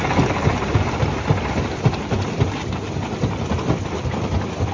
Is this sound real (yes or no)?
no